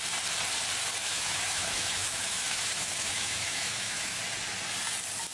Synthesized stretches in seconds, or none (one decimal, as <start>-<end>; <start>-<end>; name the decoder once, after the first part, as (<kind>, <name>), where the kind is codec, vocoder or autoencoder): 1.0-4.2 (autoencoder, DAC-VAE)